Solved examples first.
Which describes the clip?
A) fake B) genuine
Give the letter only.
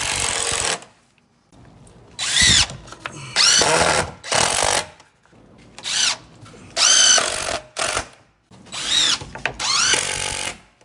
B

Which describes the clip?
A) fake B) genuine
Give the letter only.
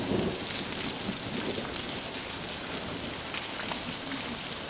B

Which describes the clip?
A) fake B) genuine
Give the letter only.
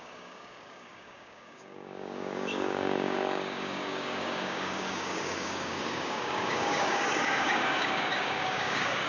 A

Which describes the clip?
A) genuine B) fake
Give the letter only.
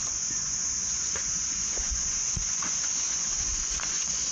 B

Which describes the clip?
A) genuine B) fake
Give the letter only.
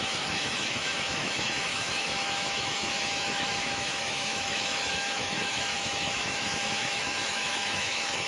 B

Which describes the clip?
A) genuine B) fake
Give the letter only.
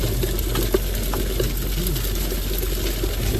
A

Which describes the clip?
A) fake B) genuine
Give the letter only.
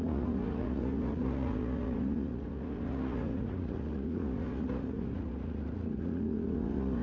A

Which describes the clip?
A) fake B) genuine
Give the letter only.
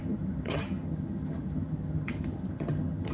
A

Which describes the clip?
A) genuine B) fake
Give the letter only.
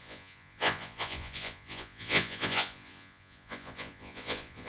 B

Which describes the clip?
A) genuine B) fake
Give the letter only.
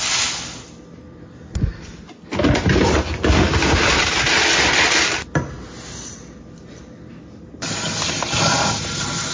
A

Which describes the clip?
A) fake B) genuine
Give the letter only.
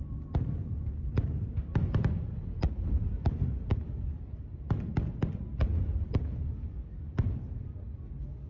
B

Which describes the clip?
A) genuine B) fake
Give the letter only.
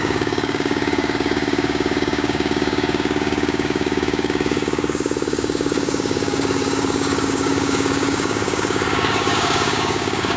B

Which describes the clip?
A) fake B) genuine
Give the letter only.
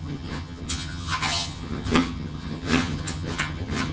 A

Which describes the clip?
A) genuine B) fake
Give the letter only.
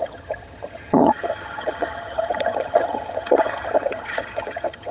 B